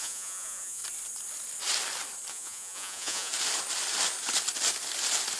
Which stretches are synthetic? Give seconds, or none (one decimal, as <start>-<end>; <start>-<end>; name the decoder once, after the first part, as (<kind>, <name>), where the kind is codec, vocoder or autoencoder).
0.0-0.8 (vocoder, Vocos); 2.3-3.3